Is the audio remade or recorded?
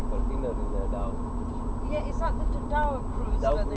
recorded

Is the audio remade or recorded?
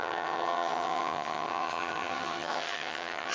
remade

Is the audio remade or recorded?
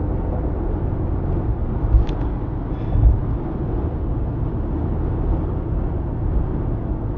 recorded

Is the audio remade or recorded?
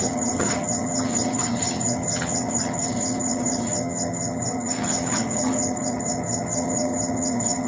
remade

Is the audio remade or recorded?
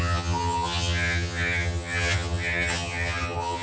remade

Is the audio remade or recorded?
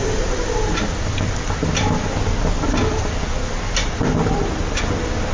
recorded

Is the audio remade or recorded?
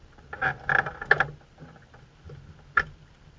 recorded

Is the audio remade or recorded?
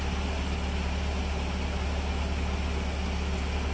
recorded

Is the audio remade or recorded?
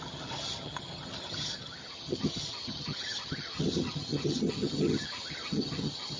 remade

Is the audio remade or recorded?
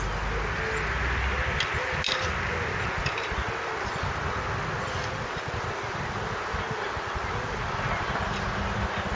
recorded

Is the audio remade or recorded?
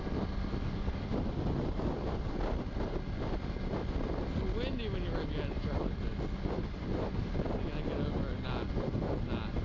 recorded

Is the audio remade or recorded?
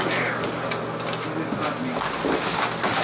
recorded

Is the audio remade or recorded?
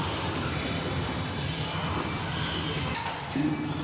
recorded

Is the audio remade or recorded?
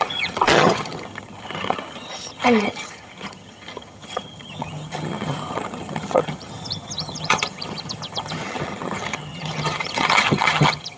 remade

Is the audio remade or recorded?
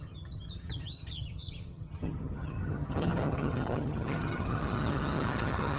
remade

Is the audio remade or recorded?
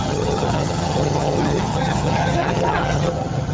remade